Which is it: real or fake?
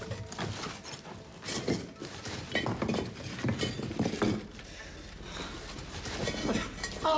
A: real